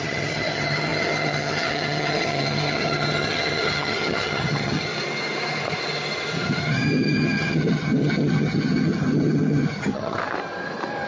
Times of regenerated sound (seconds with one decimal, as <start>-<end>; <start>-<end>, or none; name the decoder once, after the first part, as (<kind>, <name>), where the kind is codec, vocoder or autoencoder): 0.0-4.9 (vocoder, HiFi-GAN); 6.6-10.2